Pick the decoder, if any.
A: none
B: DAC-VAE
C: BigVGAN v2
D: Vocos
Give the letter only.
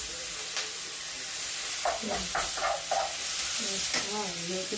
A